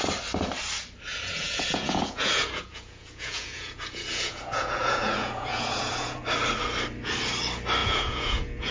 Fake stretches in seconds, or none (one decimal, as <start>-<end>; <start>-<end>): 1.1-6.2; 7.8-8.7